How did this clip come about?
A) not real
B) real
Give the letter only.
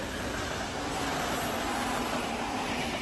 B